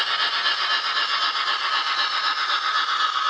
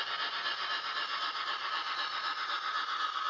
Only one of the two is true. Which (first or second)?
first